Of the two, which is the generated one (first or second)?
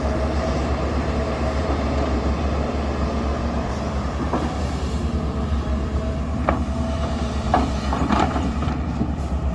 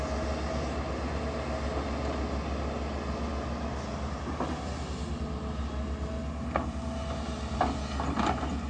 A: first